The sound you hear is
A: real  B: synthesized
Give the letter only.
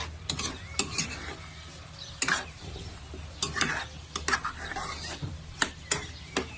A